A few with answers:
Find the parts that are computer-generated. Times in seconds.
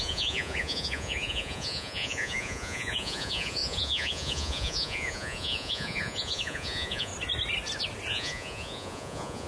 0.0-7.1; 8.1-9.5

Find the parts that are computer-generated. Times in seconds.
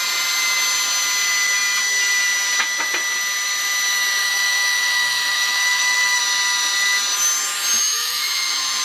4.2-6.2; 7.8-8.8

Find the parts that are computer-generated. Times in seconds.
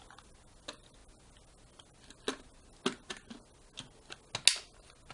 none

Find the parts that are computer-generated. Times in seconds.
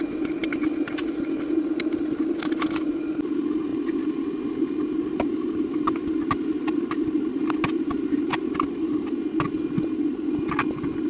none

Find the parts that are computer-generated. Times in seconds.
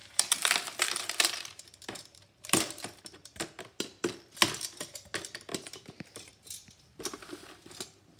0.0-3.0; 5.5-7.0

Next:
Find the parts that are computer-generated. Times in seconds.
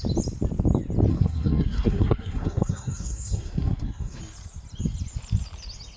1.1-4.2